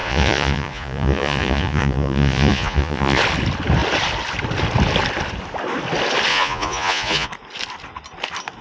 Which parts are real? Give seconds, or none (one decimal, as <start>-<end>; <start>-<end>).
3.2-6.3; 7.3-8.6